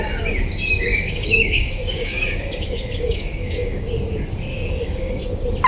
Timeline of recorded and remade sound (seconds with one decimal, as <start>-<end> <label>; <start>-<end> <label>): 0.0-0.9 recorded; 0.9-3.9 remade; 3.9-4.5 recorded; 4.5-5.2 remade; 5.2-5.7 recorded